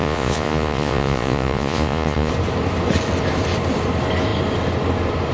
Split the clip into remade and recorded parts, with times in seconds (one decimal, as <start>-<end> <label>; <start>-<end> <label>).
0.0-2.3 remade; 2.3-5.3 recorded